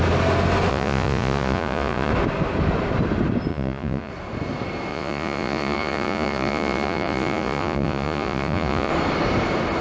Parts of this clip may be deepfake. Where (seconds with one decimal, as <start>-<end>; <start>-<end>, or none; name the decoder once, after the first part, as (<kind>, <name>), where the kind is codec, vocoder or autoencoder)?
0.7-2.1 (vocoder, Vocos); 3.5-4.1; 4.9-8.9